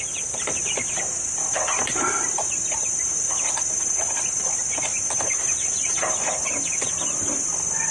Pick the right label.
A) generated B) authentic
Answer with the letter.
B